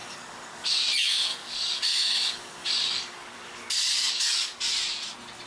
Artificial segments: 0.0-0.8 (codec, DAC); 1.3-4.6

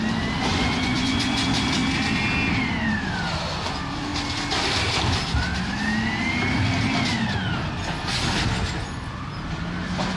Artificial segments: 0.5-1.4 (vocoder, Vocos)